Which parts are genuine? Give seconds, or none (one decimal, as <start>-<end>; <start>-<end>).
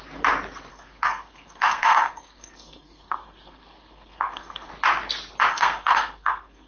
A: 0.0-0.7; 4.7-5.5